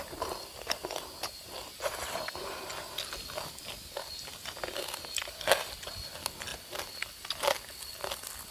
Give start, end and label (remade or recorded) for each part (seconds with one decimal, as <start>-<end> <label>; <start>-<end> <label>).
0.0-8.5 recorded